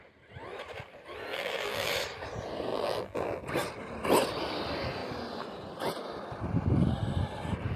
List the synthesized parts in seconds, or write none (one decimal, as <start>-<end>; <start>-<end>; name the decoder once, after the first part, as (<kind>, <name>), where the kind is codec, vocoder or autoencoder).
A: 1.3-1.9 (vocoder, BigVGAN v2); 2.7-3.4